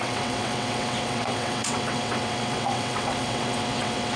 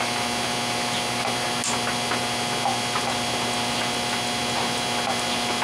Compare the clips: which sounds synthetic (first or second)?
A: first